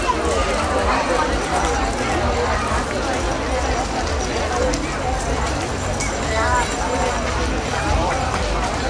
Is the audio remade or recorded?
recorded